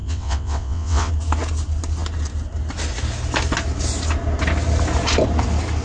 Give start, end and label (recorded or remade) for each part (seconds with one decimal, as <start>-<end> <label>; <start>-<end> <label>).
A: 0.0-1.1 remade; 1.1-5.8 recorded